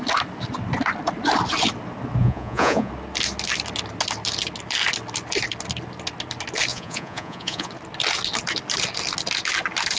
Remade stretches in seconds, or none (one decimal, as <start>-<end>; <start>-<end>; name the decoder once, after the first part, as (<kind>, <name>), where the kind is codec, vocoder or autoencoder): 2.2-2.9 (vocoder, Vocos); 6.7-7.7

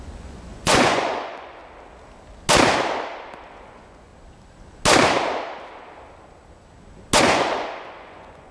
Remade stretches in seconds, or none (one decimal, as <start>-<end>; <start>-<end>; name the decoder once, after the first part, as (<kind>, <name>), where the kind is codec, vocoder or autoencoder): 0.0-1.6 (vocoder, Vocos); 3.5-4.1; 7.2-8.5

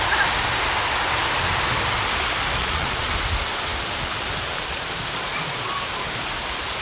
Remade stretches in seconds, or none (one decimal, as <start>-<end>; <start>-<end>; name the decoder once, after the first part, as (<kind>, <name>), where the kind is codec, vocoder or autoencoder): 2.6-3.1 (vocoder, Vocos)

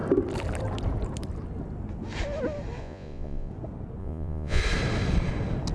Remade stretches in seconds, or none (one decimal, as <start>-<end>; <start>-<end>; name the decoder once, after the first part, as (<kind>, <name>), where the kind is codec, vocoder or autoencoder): 2.8-3.5 (vocoder, Vocos); 4.0-4.6

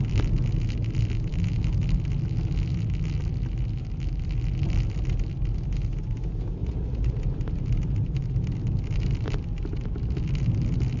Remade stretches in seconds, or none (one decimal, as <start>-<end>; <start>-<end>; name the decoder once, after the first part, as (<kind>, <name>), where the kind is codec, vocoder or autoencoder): 6.6-7.2 (vocoder, Vocos)

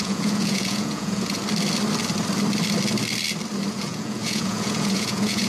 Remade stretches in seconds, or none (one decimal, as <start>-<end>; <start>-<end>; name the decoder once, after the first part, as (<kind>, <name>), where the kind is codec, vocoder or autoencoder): 0.0-1.4 (vocoder, Vocos); 3.7-5.5